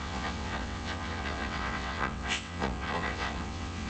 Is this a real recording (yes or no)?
no